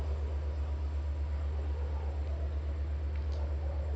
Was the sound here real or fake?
real